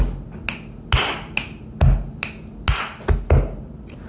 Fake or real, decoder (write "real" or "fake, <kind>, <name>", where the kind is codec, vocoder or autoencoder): real